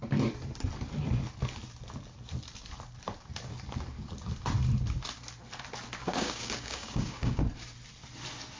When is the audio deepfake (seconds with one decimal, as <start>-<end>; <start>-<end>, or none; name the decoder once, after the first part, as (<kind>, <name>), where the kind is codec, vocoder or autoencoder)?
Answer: 6.0-7.4 (codec, DAC)